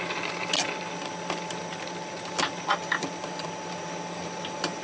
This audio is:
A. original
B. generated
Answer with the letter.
A